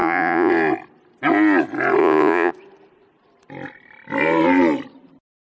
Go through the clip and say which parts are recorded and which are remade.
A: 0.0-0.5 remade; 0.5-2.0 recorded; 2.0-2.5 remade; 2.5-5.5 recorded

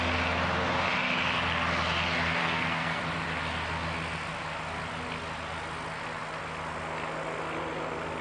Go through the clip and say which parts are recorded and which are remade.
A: 0.0-2.4 recorded; 2.4-3.0 remade; 3.0-8.2 recorded

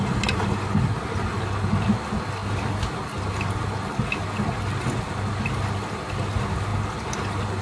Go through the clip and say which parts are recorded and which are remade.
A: 0.0-7.6 recorded